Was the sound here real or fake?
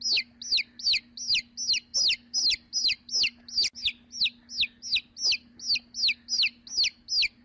real